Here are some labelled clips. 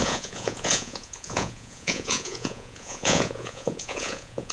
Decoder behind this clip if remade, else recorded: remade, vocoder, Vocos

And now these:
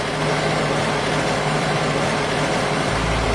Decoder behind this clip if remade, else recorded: remade, vocoder, BigVGAN v2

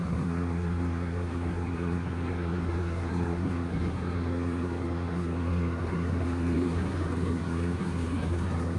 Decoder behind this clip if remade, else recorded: remade, codec, SNAC